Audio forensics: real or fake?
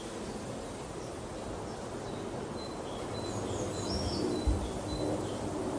real